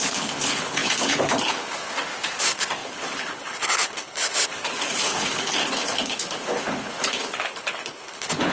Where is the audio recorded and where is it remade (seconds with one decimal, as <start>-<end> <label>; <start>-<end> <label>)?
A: 0.0-1.9 remade; 1.9-2.4 recorded; 2.4-8.5 remade